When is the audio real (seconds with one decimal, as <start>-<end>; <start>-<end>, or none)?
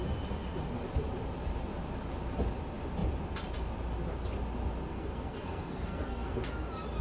0.0-4.9; 6.5-7.0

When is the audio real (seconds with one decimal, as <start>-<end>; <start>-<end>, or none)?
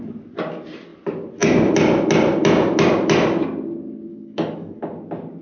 0.0-4.1; 4.8-5.4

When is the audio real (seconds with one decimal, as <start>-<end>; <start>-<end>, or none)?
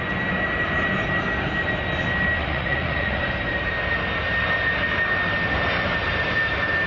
0.0-2.4; 3.2-6.9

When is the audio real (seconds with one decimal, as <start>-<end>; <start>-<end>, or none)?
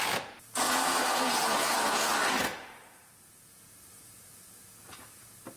2.1-2.7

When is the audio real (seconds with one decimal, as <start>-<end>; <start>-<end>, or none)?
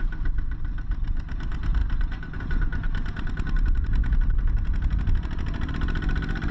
0.0-6.5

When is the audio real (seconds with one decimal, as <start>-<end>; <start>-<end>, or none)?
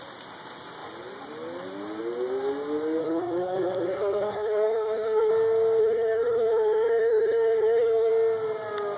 0.0-3.0; 5.3-5.8; 8.1-9.0